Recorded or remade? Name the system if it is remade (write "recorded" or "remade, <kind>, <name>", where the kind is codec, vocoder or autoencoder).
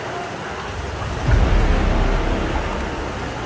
recorded